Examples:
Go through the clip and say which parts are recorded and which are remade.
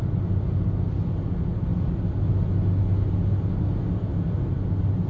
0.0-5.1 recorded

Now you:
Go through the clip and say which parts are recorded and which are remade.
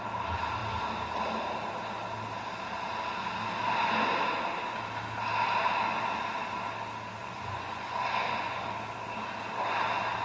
0.0-7.2 recorded; 7.2-8.7 remade; 8.7-10.2 recorded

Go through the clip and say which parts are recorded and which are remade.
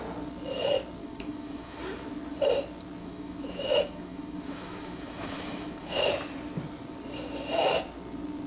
0.0-1.0 recorded; 1.0-1.8 remade; 1.8-3.0 recorded; 3.0-6.1 remade; 6.1-8.5 recorded